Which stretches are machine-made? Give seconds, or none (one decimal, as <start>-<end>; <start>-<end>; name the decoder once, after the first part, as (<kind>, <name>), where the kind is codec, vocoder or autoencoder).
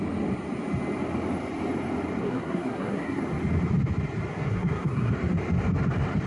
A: 2.2-3.2 (codec, SNAC); 4.3-5.1